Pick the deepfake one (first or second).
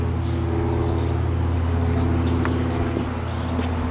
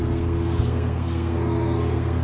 second